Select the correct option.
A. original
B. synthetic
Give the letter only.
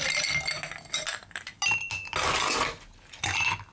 A